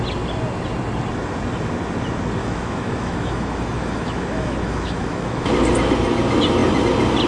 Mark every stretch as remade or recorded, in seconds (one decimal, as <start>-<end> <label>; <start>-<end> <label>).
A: 0.0-2.4 recorded; 2.4-5.5 remade; 5.5-7.3 recorded